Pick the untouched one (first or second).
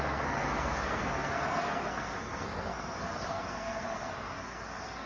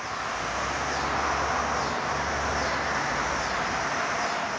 second